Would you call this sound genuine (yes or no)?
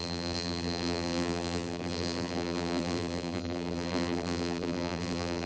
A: no